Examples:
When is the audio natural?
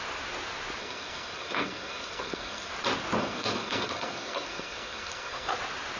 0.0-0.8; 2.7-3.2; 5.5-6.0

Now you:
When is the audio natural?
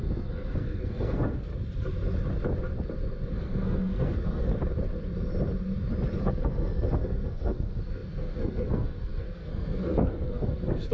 1.5-3.3; 4.5-6.2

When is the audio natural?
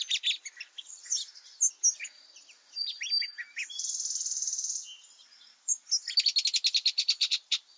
0.0-7.8